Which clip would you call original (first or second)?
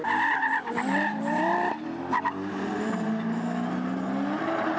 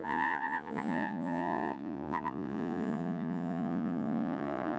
first